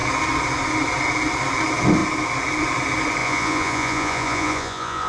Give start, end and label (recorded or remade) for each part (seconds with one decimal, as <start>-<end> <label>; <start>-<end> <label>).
0.0-3.2 recorded; 3.2-5.1 remade